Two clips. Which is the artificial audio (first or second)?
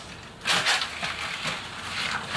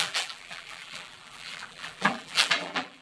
second